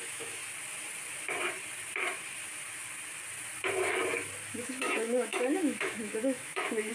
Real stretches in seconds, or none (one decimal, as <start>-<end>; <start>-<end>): 0.4-4.5